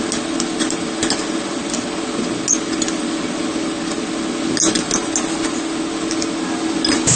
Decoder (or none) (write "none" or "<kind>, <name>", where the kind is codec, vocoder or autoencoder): none